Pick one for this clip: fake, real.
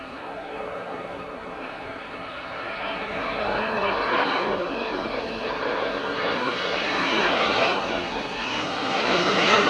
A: fake